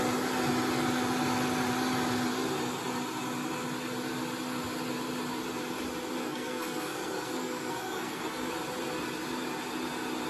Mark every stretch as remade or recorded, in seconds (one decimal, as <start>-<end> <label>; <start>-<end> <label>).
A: 0.0-6.2 recorded; 6.2-8.5 remade; 8.5-10.3 recorded